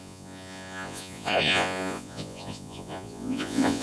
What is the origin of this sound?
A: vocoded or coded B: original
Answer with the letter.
A